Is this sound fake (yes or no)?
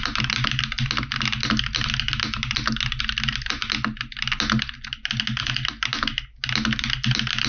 no